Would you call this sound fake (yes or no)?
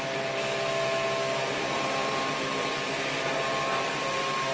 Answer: no